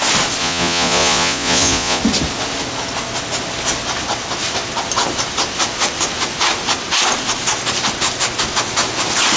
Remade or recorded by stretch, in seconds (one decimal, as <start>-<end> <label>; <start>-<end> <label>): 0.0-0.4 recorded; 0.4-2.0 remade; 2.0-9.4 recorded